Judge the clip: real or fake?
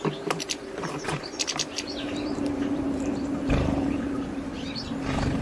fake